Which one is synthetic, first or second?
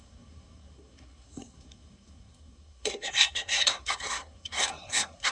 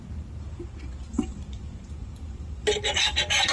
first